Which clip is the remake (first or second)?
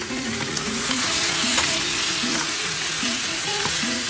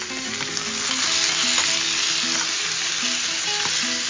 first